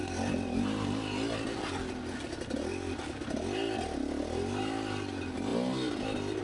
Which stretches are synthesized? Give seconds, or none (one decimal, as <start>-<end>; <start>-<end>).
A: none